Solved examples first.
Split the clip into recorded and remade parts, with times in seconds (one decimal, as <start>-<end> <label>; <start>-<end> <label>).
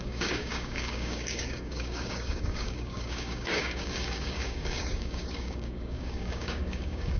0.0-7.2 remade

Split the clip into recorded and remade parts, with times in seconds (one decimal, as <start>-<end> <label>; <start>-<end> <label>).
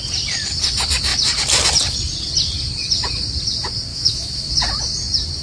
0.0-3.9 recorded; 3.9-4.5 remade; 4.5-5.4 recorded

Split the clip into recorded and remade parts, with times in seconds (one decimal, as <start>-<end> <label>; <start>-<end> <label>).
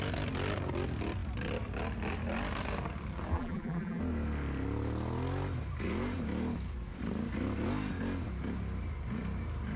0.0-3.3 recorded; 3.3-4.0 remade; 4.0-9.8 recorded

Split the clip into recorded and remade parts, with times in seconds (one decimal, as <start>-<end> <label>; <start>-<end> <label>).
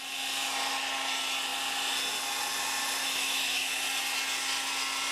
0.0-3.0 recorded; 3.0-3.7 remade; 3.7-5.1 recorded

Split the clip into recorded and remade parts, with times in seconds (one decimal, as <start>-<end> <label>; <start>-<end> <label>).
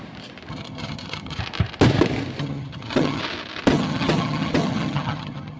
0.0-0.5 recorded; 0.5-1.4 remade; 1.4-2.4 recorded; 2.4-3.2 remade; 3.2-3.7 recorded; 3.7-5.6 remade